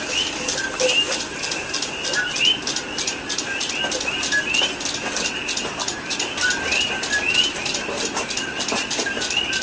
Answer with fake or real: real